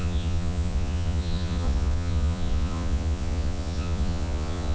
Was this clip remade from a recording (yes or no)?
yes